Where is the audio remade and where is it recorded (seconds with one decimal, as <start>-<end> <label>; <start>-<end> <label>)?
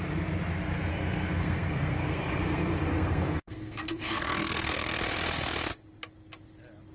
0.0-0.9 recorded; 0.9-5.0 remade; 5.0-6.9 recorded